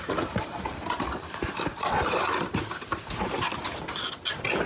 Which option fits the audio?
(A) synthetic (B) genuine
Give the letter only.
B